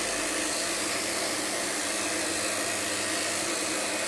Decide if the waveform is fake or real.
real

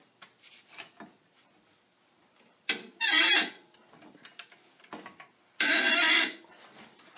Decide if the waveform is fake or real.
fake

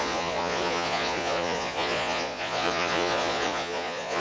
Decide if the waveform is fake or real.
fake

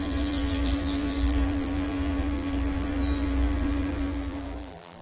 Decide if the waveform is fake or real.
fake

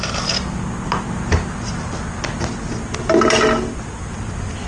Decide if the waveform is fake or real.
real